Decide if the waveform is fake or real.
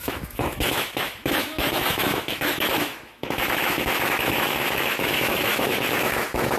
fake